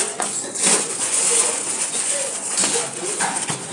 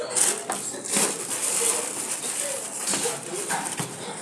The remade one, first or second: first